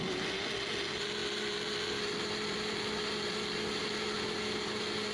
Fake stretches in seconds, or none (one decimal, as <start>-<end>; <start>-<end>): none